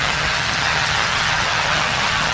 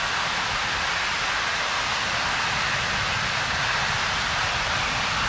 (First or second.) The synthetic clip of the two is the first